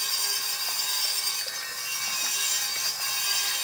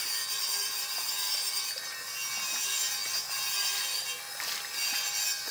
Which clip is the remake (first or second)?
first